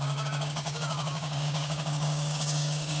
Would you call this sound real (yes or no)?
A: no